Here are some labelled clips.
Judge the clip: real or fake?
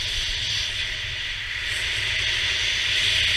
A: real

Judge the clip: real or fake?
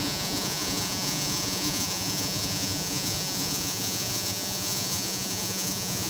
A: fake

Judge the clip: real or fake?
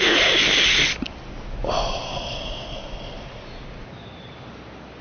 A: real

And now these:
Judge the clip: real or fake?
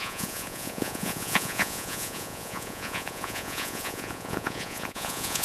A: fake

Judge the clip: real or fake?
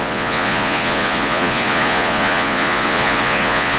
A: fake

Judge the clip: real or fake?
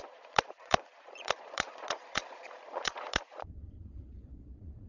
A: fake